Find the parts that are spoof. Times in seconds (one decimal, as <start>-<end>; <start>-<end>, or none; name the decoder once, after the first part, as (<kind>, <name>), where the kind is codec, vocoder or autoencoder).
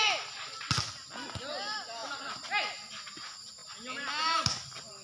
none